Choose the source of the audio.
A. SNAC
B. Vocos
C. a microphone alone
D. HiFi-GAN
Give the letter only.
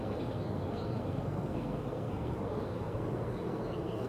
A